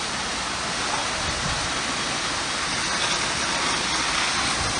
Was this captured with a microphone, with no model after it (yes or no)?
yes